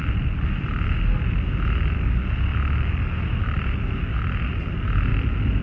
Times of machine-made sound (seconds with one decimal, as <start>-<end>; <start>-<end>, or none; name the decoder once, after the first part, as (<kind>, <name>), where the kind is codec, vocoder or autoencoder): none